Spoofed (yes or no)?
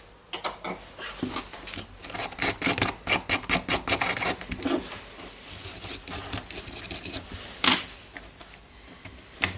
no